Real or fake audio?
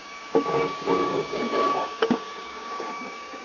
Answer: fake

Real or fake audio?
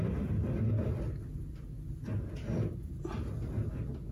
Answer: real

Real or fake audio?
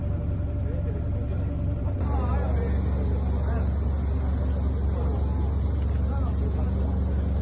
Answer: real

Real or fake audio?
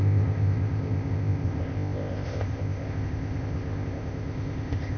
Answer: fake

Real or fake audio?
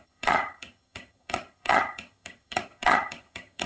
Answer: fake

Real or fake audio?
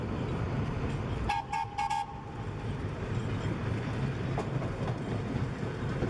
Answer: real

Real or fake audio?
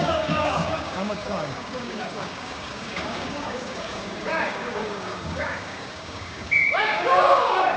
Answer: fake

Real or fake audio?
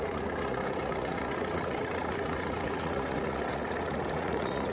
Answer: fake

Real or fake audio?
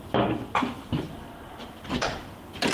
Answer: real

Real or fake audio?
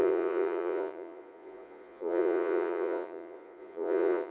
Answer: fake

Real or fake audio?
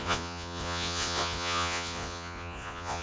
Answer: fake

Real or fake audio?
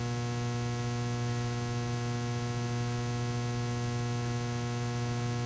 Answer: real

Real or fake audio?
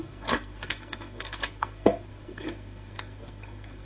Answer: fake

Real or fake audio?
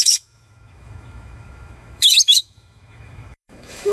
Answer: fake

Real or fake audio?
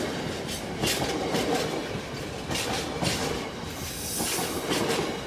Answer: fake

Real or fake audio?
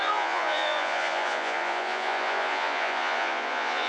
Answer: fake